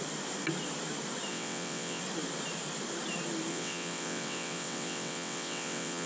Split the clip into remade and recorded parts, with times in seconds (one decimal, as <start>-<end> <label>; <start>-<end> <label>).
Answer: 0.0-1.3 recorded; 1.3-2.0 remade; 2.0-3.5 recorded; 3.5-6.1 remade